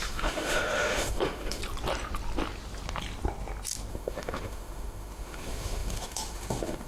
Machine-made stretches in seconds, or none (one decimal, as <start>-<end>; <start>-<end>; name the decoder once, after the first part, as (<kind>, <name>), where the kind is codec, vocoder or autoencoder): 0.0-1.6 (autoencoder, DAC-VAE); 3.9-6.9